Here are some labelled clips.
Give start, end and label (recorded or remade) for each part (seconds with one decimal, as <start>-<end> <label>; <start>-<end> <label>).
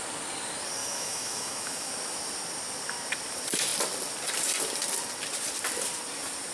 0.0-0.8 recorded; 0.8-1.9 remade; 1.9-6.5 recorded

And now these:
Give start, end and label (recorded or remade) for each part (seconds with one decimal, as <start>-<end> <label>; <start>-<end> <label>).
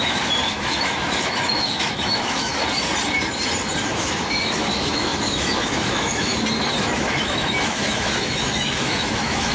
0.0-2.5 remade; 2.5-3.9 recorded; 3.9-6.3 remade; 6.3-6.8 recorded; 6.8-9.5 remade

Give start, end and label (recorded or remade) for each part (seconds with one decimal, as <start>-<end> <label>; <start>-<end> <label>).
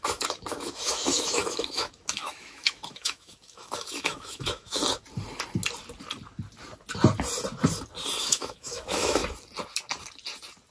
0.0-4.8 remade; 4.8-8.2 recorded; 8.2-9.2 remade; 9.2-10.7 recorded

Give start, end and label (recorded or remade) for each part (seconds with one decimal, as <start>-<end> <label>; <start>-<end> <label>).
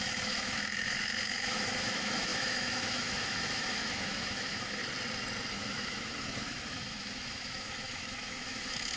0.0-4.8 remade; 4.8-5.5 recorded; 5.5-9.0 remade